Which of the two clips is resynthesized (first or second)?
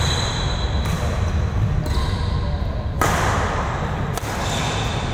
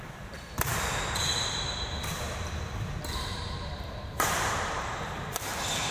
second